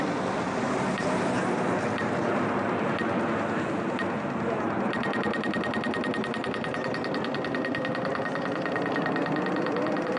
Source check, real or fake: real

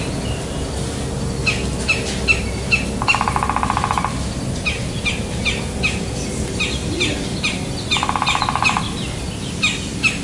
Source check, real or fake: real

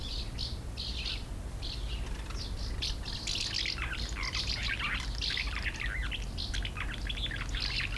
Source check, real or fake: real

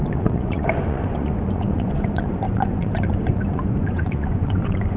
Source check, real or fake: fake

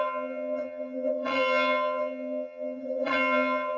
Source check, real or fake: fake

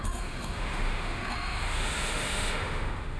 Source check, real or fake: fake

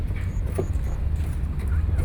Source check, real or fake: real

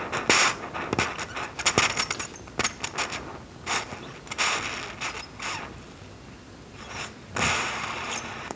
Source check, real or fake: real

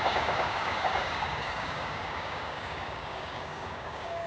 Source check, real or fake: fake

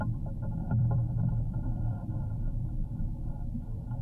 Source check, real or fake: fake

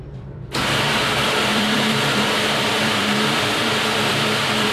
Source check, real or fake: fake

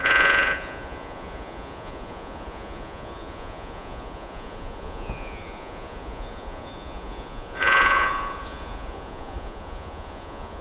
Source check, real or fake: fake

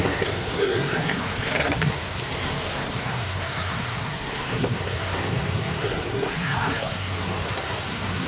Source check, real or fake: fake